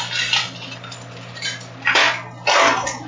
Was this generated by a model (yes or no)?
no